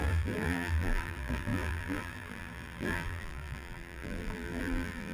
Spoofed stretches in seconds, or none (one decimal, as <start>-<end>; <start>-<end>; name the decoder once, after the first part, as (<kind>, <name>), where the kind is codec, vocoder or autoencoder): 0.0-5.1 (vocoder, BigVGAN v2)